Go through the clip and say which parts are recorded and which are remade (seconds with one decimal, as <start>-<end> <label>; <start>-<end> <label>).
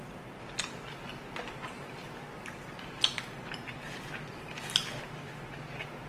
0.0-6.1 recorded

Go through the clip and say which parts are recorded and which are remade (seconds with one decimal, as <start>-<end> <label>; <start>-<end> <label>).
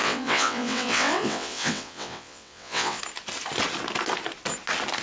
0.0-3.0 remade; 3.0-5.0 recorded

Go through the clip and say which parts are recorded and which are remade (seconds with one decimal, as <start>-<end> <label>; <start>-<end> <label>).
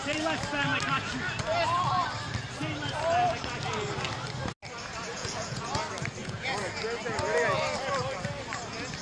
0.0-5.1 recorded; 5.1-5.7 remade; 5.7-6.2 recorded; 6.2-6.8 remade; 6.8-9.0 recorded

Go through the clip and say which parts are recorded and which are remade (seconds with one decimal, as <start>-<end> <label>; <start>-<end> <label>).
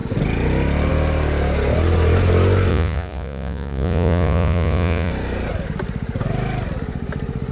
0.0-2.7 recorded; 2.7-5.1 remade; 5.1-7.5 recorded